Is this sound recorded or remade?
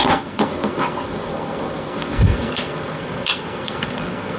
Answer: remade